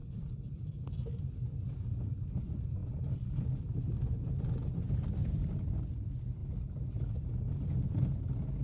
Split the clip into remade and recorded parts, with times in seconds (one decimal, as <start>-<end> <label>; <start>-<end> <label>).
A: 0.0-0.7 remade; 0.7-2.8 recorded; 2.8-3.7 remade; 3.7-5.2 recorded; 5.2-5.9 remade; 5.9-6.4 recorded; 6.4-7.3 remade; 7.3-8.6 recorded